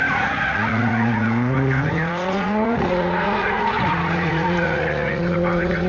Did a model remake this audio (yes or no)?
yes